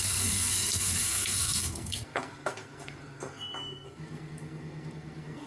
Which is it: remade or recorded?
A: remade